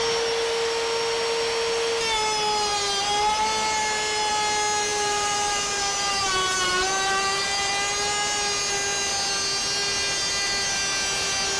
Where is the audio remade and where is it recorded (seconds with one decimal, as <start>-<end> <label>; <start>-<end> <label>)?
0.0-4.9 recorded; 4.9-7.7 remade; 7.7-11.6 recorded